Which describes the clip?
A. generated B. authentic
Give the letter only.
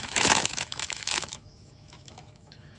A